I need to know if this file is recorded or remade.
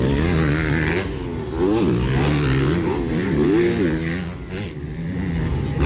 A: recorded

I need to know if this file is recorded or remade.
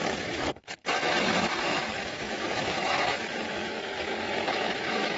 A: remade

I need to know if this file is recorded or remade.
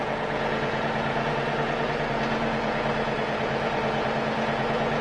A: remade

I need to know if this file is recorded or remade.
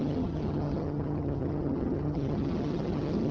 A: remade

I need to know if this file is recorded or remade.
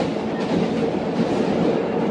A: recorded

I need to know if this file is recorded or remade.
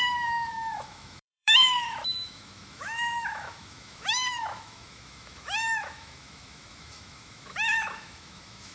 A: remade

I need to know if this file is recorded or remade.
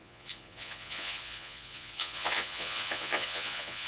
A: remade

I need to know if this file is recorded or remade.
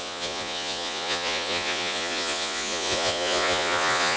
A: remade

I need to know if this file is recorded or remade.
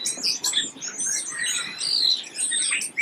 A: recorded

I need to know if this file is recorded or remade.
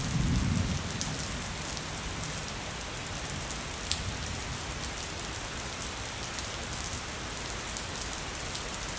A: recorded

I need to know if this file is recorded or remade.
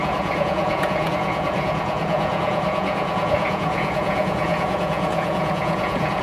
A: remade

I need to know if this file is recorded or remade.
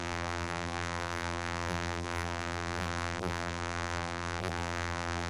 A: remade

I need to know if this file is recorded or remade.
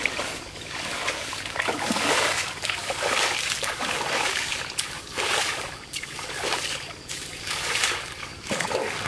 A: remade